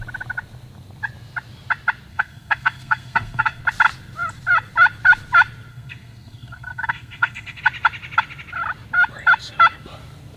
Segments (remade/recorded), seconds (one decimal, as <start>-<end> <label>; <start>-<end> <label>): 0.0-2.1 recorded; 2.1-3.6 remade; 3.6-5.7 recorded; 5.7-7.6 remade; 7.6-10.4 recorded

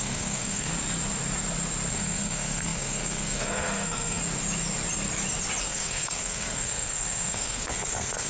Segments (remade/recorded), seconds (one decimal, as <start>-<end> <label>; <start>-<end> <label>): 0.0-0.7 remade; 0.7-1.9 recorded; 1.9-4.2 remade; 4.2-5.6 recorded; 5.6-8.3 remade

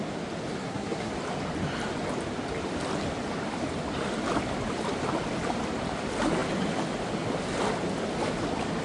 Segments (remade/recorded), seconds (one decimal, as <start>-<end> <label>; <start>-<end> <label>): 0.0-0.6 recorded; 0.6-1.1 remade; 1.1-8.8 recorded

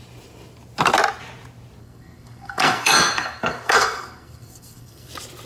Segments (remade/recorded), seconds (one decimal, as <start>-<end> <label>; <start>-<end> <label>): 0.0-1.8 recorded; 1.8-5.1 remade; 5.1-5.5 recorded